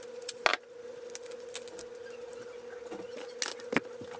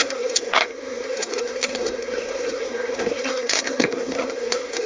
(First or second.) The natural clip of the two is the first